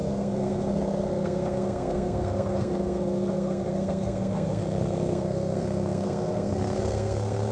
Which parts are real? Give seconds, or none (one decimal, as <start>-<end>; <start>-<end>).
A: none